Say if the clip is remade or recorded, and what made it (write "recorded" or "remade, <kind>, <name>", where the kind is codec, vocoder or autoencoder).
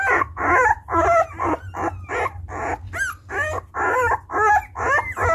recorded